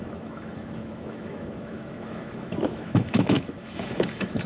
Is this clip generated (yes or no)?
yes